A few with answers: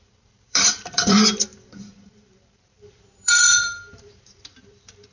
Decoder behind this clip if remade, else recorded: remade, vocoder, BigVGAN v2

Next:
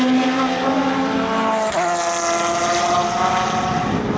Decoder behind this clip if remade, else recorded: recorded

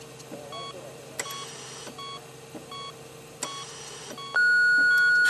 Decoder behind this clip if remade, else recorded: recorded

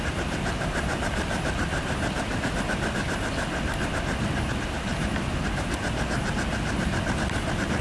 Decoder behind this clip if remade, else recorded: recorded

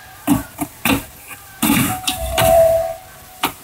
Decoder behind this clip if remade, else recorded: remade, vocoder, BigVGAN v2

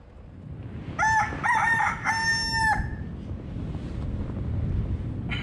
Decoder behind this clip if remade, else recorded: recorded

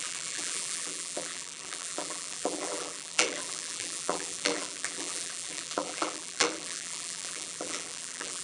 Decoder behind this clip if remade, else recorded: remade, vocoder, BigVGAN v2